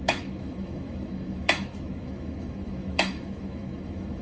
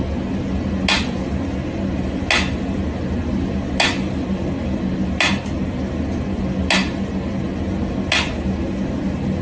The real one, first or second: second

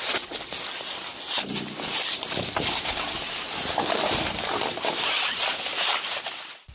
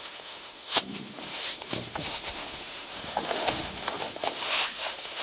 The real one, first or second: first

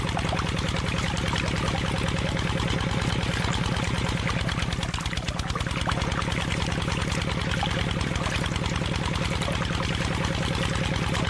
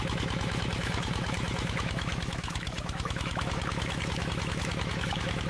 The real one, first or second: first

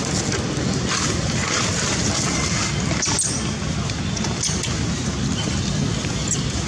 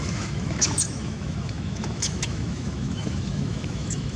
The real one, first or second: first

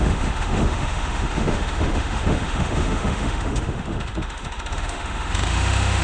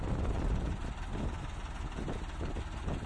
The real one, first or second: second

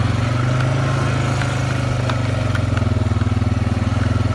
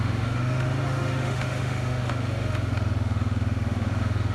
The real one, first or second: first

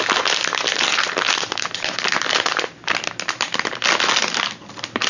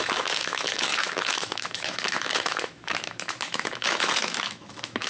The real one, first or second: first